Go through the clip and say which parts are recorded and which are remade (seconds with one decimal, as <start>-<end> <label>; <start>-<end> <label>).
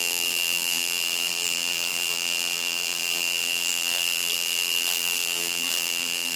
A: 0.0-6.4 remade